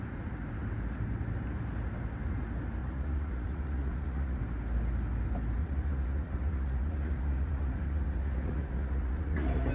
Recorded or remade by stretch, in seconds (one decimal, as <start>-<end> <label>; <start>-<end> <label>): 0.0-2.8 recorded; 2.8-4.4 remade; 4.4-5.6 recorded; 5.6-9.7 remade